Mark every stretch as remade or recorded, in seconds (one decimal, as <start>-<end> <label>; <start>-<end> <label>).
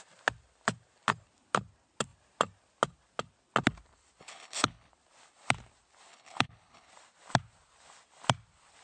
0.0-4.2 recorded; 4.2-4.9 remade; 4.9-6.1 recorded; 6.1-6.9 remade; 6.9-8.8 recorded